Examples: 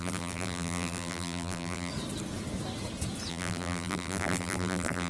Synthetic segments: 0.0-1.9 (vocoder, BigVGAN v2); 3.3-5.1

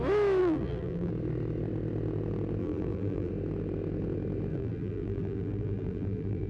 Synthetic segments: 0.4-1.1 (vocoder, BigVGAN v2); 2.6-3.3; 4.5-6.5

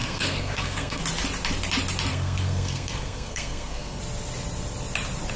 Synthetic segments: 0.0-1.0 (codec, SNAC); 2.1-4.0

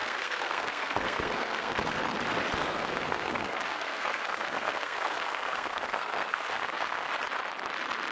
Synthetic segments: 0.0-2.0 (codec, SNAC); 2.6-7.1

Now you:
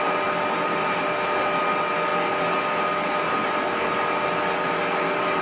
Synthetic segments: none